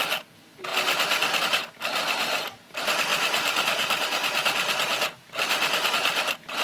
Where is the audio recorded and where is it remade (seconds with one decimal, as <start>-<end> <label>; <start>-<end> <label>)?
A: 0.0-6.6 recorded